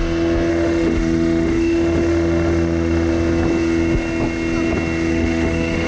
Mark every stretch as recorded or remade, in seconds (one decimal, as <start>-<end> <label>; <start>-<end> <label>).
0.0-0.5 recorded; 0.5-3.1 remade; 3.1-5.1 recorded; 5.1-5.9 remade